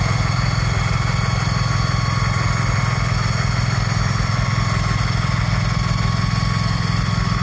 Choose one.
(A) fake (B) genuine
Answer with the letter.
B